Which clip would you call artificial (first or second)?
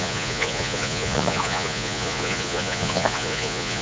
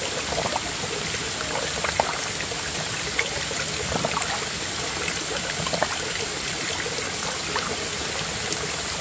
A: first